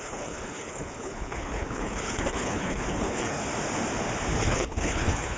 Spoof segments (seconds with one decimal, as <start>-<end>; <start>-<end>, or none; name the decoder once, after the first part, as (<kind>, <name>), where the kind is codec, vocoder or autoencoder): 0.0-3.4 (codec, HILCodec); 4.4-5.4